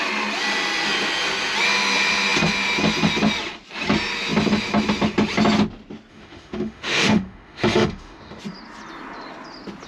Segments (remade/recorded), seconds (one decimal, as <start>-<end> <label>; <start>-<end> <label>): 0.0-6.1 recorded; 6.1-8.4 remade; 8.4-9.9 recorded